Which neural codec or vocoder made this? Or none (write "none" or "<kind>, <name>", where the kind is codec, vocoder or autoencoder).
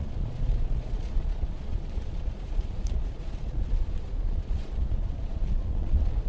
vocoder, Vocos